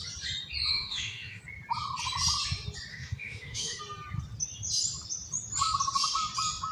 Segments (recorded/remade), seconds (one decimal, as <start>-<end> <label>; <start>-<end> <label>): 0.0-0.7 recorded; 0.7-1.4 remade; 1.4-2.9 recorded; 2.9-3.8 remade; 3.8-6.7 recorded